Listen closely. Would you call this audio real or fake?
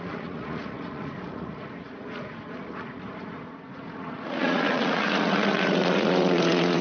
fake